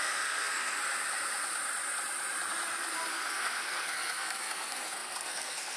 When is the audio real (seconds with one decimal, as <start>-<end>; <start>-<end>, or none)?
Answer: 0.8-3.1